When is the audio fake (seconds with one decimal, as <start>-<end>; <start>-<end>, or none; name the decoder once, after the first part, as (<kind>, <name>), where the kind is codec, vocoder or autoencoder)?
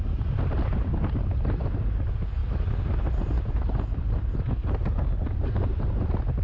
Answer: none